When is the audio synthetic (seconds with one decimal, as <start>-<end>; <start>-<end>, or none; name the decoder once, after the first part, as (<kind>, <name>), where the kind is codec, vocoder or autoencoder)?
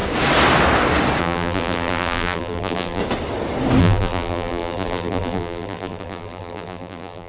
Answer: 1.2-3.0 (vocoder, BigVGAN v2); 3.8-7.3